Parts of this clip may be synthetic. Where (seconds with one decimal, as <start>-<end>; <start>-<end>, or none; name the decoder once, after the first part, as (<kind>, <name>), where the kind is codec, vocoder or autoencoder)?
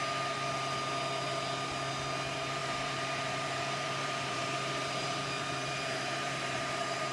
2.6-7.1 (vocoder, BigVGAN v2)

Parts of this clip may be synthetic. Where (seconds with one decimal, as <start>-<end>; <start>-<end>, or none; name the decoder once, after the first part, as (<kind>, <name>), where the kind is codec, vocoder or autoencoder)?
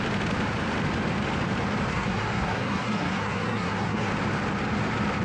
1.9-4.1 (codec, SNAC)